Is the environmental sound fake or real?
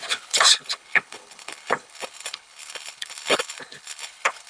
fake